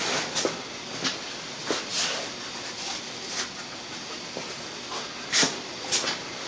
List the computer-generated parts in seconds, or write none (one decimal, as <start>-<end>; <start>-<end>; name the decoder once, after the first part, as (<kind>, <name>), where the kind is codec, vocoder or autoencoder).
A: none